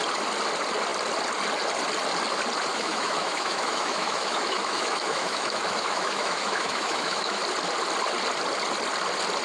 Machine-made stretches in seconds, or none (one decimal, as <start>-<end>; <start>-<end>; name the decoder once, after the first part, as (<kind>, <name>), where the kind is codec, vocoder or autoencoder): 2.7-7.4 (autoencoder, DAC-VAE)